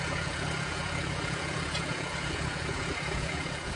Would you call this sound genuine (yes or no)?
no